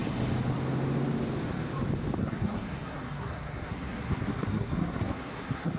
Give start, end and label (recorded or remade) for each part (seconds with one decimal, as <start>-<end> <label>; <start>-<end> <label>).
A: 0.0-2.2 recorded; 2.2-5.8 remade